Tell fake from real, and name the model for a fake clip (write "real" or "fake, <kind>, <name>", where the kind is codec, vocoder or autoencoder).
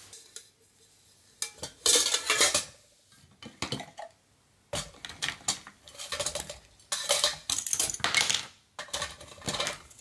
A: real